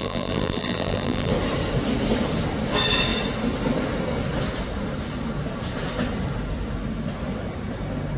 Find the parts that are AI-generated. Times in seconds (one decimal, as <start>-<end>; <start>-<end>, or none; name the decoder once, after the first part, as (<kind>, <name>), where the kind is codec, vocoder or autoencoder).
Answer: 0.0-1.3 (vocoder, BigVGAN v2)

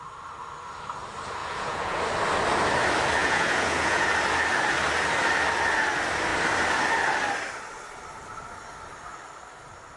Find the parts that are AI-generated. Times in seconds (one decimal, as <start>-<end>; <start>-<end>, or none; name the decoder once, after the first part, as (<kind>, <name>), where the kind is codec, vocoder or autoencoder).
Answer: 1.4-2.0 (vocoder, Vocos); 3.2-4.1

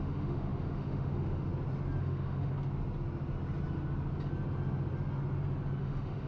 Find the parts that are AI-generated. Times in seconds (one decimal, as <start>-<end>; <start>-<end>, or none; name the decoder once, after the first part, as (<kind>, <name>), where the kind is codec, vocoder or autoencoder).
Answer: 0.0-1.5 (autoencoder, DAC-VAE); 2.0-2.5; 5.8-6.3

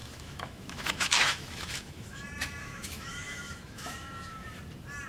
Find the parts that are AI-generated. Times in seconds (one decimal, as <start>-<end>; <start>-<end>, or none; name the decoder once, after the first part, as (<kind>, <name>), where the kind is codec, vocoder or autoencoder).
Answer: 0.0-2.2 (autoencoder, DAC-VAE); 2.6-4.6

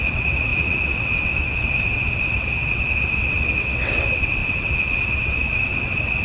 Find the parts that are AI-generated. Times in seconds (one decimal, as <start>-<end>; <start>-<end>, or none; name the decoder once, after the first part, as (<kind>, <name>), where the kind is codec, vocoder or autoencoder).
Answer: 0.0-6.2 (vocoder, WaveNeXt)